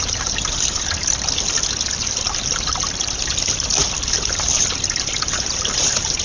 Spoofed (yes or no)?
yes